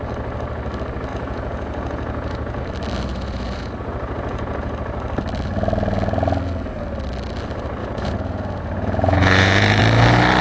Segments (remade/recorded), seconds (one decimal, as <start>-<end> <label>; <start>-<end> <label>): 0.0-1.1 recorded; 1.1-2.6 remade; 2.6-3.1 recorded; 3.1-4.7 remade; 4.7-7.8 recorded; 7.8-9.8 remade; 9.8-10.4 recorded